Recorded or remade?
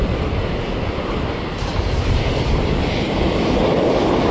recorded